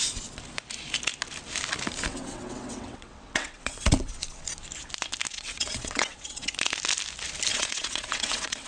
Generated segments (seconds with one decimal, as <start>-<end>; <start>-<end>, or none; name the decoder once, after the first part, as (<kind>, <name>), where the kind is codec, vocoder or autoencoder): 2.1-4.1 (vocoder, WaveNeXt); 5.3-6.5; 7.5-8.7

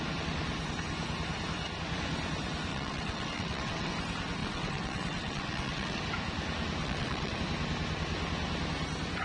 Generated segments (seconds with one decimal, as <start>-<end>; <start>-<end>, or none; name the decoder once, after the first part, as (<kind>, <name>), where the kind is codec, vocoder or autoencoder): 2.7-3.9 (vocoder, WaveNeXt); 4.4-6.0; 6.8-7.4

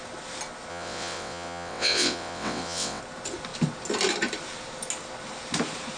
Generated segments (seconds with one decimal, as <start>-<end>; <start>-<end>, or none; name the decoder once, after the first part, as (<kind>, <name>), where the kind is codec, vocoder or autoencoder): 0.7-3.0 (vocoder, WaveNeXt)

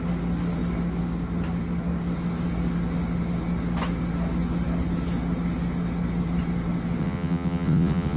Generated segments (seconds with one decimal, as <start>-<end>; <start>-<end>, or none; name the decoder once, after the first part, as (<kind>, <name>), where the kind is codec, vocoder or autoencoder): 7.0-8.2 (vocoder, WaveNeXt)

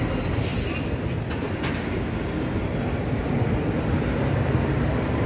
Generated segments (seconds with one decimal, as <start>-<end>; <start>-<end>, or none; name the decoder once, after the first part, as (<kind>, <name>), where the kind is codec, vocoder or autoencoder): none

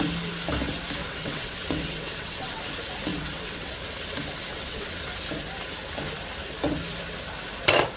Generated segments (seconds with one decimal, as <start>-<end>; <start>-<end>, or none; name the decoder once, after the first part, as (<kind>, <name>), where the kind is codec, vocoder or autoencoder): 1.0-2.6 (vocoder, WaveNeXt); 3.1-3.7; 4.5-5.0